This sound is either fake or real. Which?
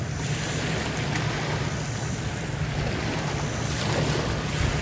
real